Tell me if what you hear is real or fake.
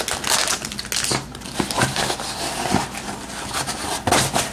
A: real